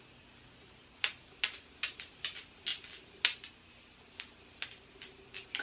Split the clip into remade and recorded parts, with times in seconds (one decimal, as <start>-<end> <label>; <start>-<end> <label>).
0.0-5.6 recorded